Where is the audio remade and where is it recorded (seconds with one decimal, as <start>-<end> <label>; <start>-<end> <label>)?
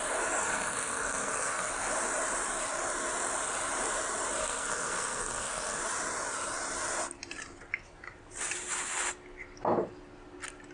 0.0-0.4 recorded; 0.4-1.7 remade; 1.7-4.4 recorded; 4.4-5.8 remade; 5.8-10.7 recorded